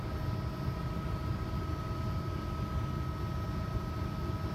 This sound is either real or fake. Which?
real